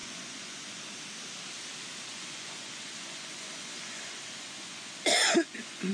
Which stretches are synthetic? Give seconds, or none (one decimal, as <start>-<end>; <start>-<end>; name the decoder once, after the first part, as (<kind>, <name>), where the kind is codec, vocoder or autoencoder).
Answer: 0.0-0.8 (vocoder, Vocos); 2.1-5.9